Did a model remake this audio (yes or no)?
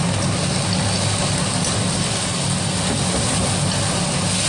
no